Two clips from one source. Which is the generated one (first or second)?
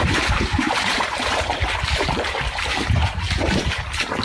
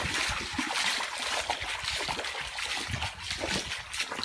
first